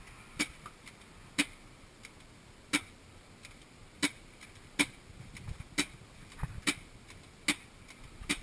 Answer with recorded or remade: recorded